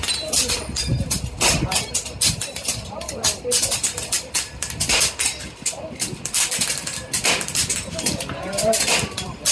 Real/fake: real